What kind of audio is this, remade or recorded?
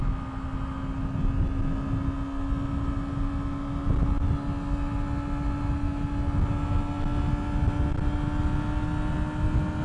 recorded